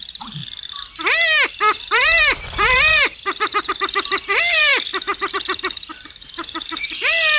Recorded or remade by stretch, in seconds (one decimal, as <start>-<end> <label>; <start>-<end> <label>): 0.0-0.4 remade; 0.4-1.5 recorded; 1.5-4.7 remade; 4.7-5.3 recorded; 5.3-7.4 remade